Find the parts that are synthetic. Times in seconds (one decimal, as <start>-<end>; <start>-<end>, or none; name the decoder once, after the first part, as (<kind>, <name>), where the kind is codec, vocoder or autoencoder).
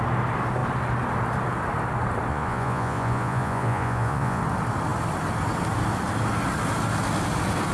2.3-4.4 (vocoder, Vocos)